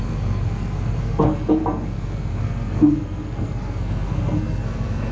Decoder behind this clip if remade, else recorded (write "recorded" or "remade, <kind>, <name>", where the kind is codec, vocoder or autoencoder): remade, codec, SNAC